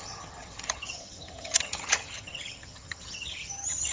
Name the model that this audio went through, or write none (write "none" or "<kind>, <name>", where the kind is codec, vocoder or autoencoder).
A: vocoder, HiFi-GAN